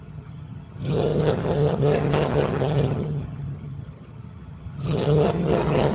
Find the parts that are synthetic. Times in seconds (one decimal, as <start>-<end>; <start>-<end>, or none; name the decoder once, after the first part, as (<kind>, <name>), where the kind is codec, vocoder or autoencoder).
0.0-5.9 (vocoder, HiFi-GAN)